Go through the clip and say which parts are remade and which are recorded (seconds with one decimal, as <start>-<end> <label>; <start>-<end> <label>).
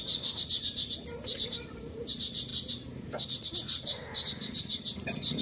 0.0-5.4 recorded